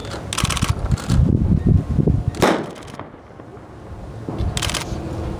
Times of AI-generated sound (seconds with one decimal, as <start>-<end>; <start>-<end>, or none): none